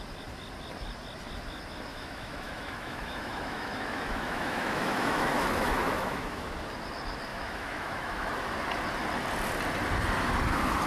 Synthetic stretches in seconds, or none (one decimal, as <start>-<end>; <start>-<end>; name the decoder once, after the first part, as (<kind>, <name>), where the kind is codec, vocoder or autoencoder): 1.9-6.5 (autoencoder, DAC-VAE); 7.3-8.3